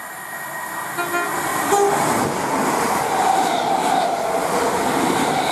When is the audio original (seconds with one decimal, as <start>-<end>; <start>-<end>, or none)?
0.0-5.5